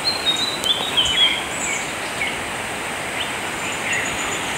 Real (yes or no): yes